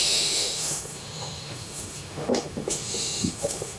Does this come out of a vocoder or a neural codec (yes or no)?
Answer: yes